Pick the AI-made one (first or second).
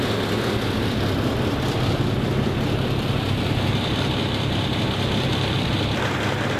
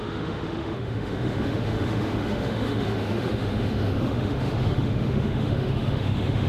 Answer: second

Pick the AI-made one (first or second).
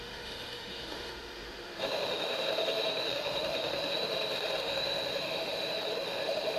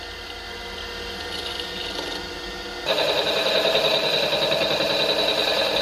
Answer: first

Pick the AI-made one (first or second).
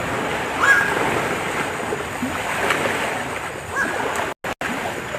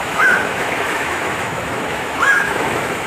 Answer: second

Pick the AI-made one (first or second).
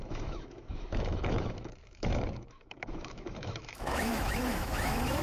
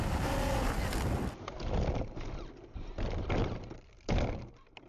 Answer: first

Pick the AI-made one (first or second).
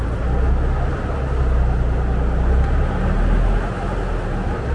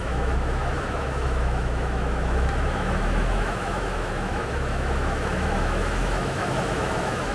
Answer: second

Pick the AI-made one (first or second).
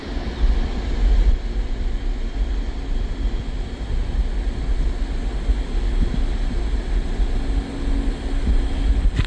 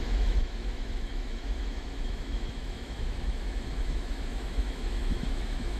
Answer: second